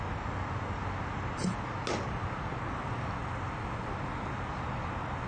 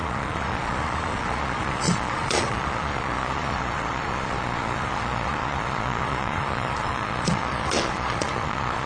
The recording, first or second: first